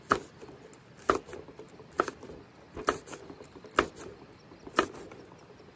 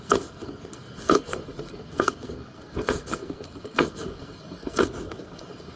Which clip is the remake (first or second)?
second